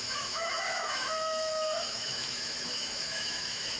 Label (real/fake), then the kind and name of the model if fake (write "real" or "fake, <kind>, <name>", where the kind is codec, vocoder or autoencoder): fake, autoencoder, DAC-VAE